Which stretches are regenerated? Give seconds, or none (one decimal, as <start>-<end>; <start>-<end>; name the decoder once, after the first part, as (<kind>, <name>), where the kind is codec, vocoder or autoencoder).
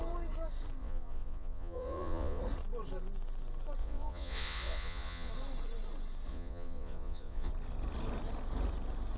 0.8-2.4 (vocoder, Vocos); 3.8-5.3; 6.3-7.5